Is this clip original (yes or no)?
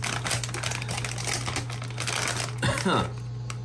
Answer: yes